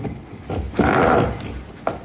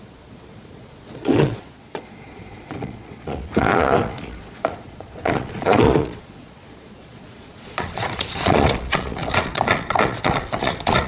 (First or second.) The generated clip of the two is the second